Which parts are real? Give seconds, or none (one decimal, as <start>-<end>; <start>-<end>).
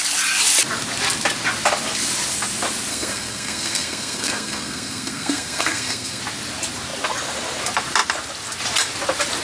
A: 0.0-2.9; 6.2-9.4